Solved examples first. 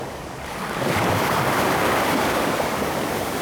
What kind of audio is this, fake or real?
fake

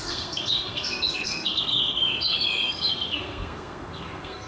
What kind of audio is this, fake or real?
fake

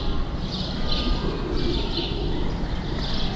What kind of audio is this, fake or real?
real